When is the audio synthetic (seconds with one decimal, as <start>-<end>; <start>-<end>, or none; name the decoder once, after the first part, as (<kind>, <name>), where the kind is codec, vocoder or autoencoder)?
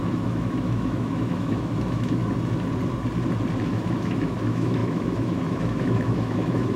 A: 0.0-2.2 (autoencoder, DAC-VAE); 3.6-6.8